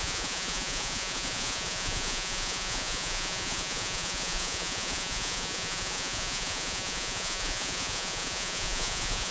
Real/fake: fake